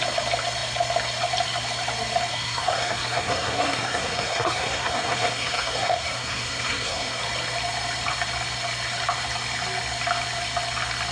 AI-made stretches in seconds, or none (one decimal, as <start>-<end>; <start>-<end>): 2.3-7.2

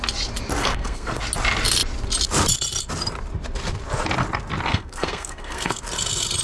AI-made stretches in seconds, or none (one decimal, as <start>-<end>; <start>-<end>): 0.6-1.2; 4.7-5.8

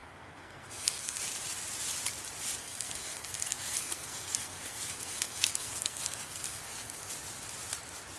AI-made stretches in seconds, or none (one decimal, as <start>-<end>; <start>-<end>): 0.0-1.2; 2.6-7.1

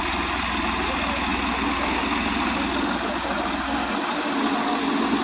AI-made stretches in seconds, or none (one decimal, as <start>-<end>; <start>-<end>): none

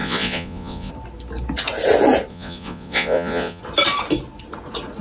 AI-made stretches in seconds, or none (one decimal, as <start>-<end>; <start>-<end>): 0.0-0.9; 2.3-3.6

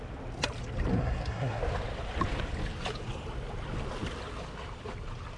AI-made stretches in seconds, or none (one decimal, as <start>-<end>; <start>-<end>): 0.9-1.6

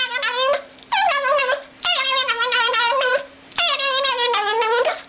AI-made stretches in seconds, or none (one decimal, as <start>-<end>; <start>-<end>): 1.4-3.1